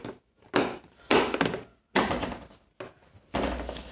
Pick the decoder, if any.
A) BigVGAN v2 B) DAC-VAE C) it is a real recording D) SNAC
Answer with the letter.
C